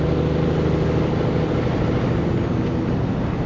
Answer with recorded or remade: recorded